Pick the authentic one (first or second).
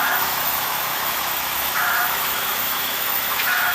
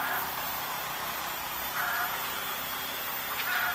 second